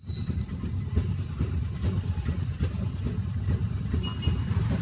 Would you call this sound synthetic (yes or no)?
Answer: no